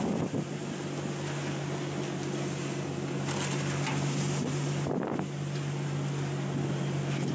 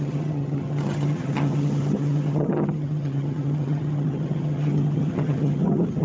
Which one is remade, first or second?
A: second